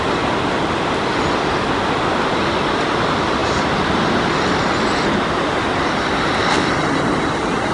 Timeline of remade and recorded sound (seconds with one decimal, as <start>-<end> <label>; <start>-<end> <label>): 0.0-7.7 recorded